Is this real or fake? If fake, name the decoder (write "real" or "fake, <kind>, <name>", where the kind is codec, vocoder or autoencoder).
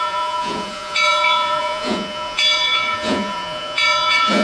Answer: fake, vocoder, Vocos